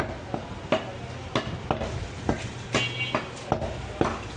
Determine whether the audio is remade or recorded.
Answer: recorded